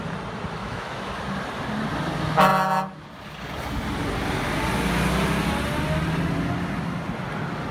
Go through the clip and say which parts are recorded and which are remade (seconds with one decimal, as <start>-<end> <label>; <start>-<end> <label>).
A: 0.0-0.6 recorded; 0.6-1.1 remade; 1.1-7.7 recorded